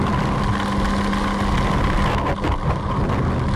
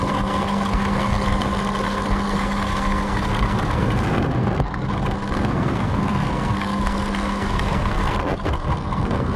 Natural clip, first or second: first